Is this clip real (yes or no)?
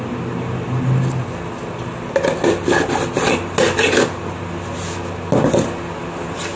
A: yes